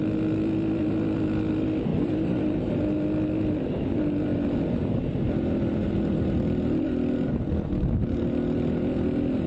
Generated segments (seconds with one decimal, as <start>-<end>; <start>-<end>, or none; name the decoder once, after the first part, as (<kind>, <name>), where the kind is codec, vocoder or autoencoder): 1.9-2.7 (vocoder, BigVGAN v2)